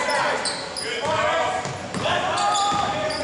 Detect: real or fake real